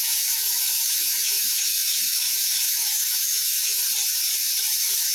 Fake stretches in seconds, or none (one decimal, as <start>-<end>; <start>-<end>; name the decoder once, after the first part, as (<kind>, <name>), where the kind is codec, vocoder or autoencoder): 0.0-3.8 (autoencoder, DAC-VAE); 4.6-5.1